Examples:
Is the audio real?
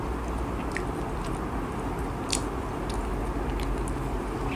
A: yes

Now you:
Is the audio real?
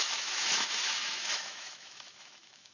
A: no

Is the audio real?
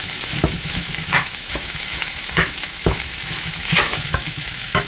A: no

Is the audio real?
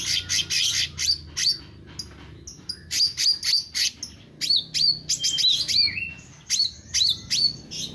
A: yes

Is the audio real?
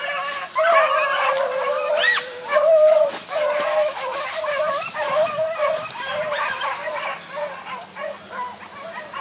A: yes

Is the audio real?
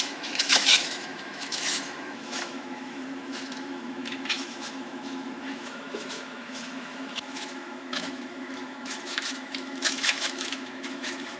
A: no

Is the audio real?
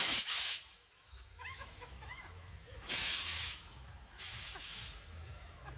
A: no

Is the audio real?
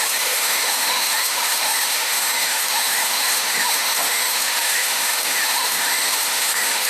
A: no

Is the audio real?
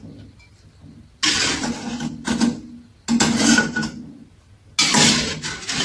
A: yes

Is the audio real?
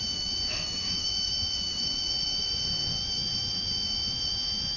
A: no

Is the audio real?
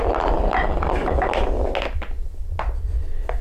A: yes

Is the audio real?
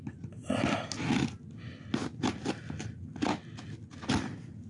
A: yes